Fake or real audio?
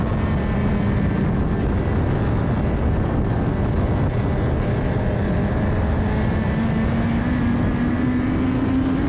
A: real